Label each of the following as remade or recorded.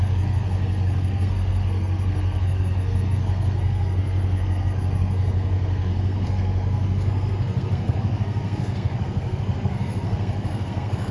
remade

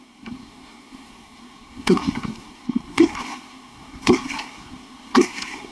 remade